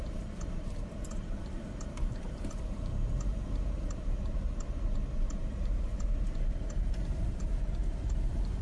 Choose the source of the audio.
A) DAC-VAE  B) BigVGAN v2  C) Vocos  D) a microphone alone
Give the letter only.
B